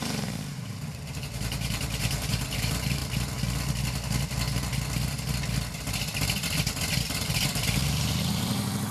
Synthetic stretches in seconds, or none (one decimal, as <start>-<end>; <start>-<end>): 0.0-3.0; 7.0-8.9